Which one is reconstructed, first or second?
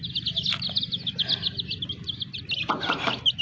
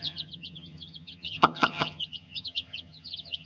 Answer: second